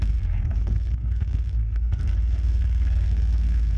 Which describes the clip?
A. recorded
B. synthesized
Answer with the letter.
B